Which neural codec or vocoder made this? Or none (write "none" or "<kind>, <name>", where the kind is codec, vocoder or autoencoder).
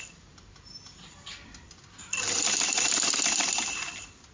none